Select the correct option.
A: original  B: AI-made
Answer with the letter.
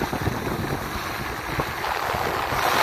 A